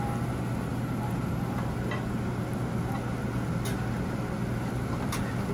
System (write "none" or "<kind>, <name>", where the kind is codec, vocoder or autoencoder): none